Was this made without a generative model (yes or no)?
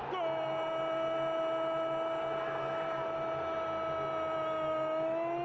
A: yes